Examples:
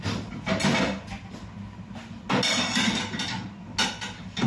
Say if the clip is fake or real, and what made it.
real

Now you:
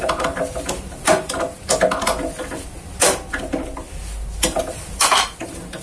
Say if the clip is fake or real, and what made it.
real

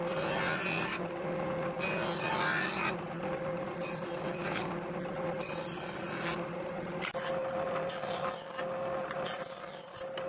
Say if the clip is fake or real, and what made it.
real